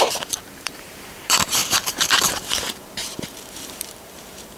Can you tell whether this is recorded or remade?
remade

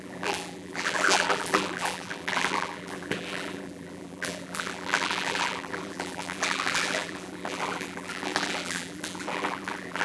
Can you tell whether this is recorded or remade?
remade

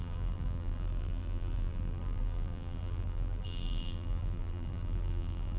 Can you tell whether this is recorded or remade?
remade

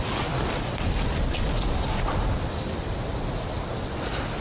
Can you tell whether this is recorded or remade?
recorded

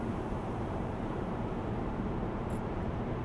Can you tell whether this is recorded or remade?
remade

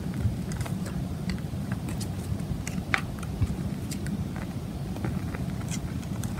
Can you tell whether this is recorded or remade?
remade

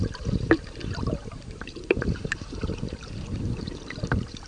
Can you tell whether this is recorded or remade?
remade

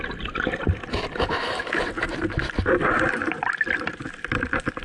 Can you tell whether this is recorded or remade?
remade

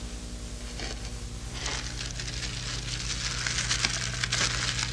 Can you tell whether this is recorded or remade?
recorded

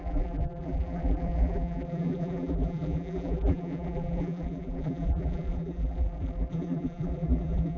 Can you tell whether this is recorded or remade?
remade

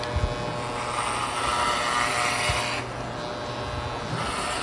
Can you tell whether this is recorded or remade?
recorded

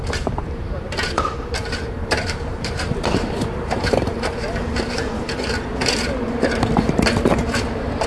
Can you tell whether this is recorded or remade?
remade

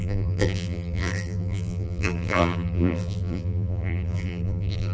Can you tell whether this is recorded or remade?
remade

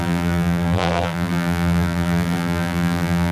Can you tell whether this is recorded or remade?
remade